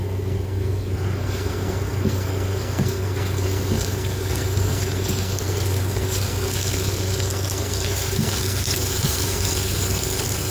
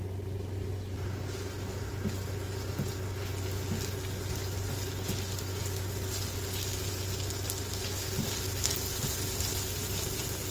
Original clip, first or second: second